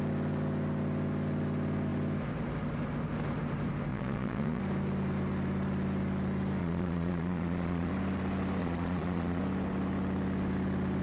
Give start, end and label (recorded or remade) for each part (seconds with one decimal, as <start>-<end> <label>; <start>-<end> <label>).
0.0-3.9 recorded; 3.9-4.6 remade; 4.6-6.6 recorded; 6.6-7.9 remade; 7.9-8.6 recorded; 8.6-9.4 remade; 9.4-11.0 recorded